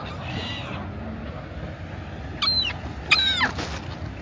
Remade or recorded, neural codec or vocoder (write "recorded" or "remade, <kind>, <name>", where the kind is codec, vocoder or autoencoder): recorded